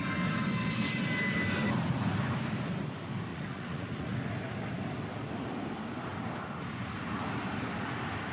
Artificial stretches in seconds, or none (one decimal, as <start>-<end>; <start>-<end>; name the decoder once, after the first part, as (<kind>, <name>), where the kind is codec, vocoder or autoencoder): 3.3-4.2 (vocoder, Vocos)